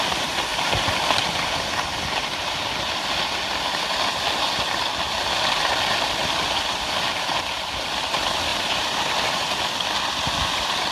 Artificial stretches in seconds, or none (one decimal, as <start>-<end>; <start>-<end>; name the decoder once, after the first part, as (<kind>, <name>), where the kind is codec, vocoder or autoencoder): 8.5-9.0 (vocoder, BigVGAN v2)